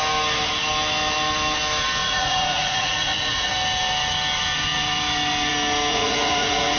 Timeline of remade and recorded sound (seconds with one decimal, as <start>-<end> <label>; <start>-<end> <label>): 0.0-2.0 recorded; 2.0-3.5 remade; 3.5-5.9 recorded; 5.9-6.8 remade